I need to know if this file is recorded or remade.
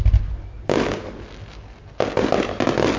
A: recorded